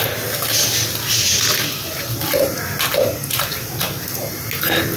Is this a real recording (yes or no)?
yes